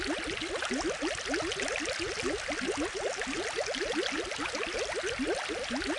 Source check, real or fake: real